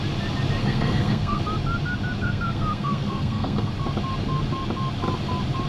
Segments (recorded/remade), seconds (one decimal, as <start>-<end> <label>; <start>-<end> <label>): 0.0-0.6 recorded; 0.6-1.4 remade; 1.4-2.2 recorded; 2.2-3.7 remade; 3.7-5.7 recorded